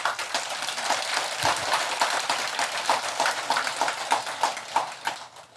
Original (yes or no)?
yes